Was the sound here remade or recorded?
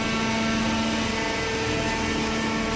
recorded